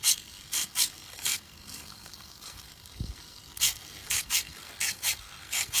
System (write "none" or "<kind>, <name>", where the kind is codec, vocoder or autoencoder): codec, SNAC